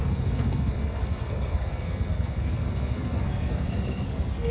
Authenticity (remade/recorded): remade